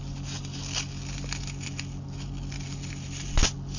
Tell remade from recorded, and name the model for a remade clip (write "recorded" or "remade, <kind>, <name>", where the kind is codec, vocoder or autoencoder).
recorded